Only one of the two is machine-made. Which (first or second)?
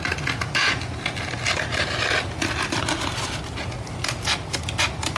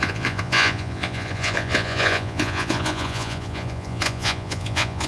second